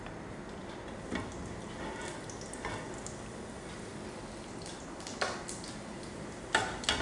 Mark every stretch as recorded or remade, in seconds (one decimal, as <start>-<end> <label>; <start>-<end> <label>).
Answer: 0.0-7.0 recorded